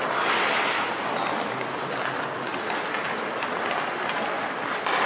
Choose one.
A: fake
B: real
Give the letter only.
B